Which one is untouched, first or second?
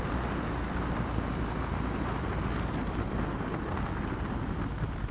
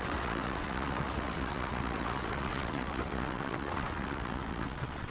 first